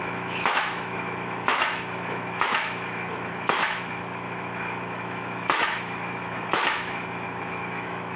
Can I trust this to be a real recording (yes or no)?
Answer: no